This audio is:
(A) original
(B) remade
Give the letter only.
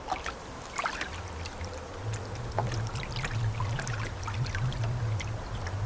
A